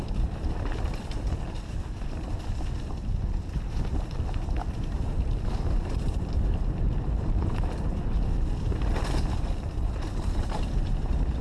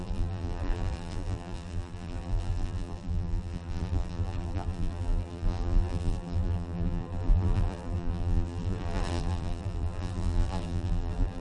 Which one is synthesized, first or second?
second